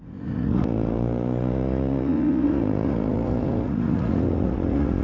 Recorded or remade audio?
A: remade